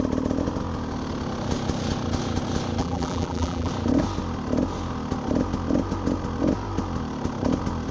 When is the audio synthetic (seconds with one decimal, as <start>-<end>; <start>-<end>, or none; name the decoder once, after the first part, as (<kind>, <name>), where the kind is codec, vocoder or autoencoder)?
2.8-3.7 (vocoder, BigVGAN v2)